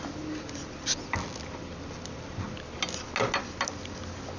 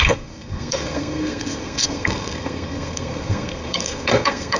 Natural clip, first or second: first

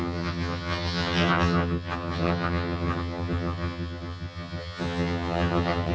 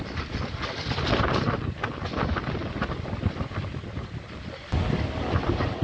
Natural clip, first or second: second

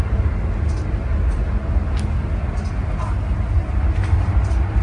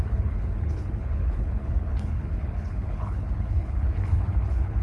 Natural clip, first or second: first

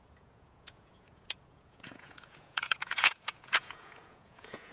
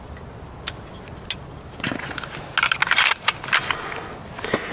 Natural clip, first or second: second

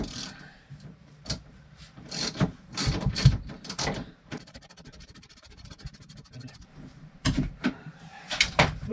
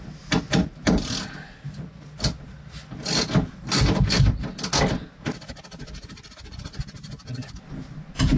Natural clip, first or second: second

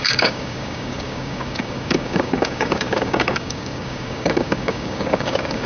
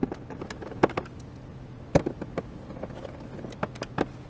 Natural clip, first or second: second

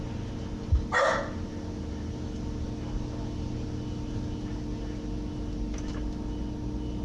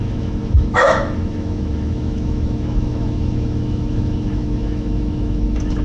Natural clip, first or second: first